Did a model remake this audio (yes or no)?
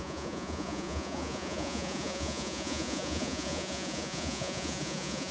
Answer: yes